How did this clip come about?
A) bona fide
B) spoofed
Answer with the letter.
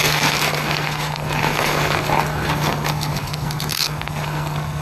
B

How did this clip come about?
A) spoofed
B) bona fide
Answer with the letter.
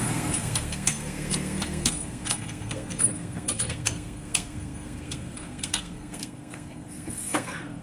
A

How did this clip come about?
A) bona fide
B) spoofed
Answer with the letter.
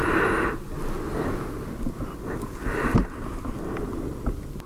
A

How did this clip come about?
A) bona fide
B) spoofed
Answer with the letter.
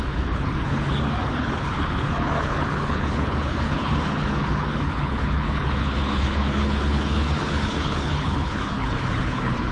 B